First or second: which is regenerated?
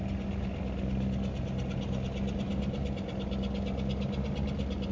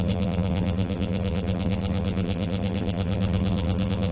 second